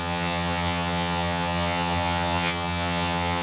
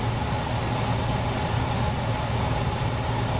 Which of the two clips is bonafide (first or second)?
second